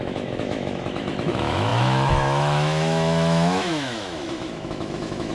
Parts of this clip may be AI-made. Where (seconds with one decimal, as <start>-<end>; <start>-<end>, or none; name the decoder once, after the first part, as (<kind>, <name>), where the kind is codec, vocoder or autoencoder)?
0.0-5.3 (autoencoder, DAC-VAE)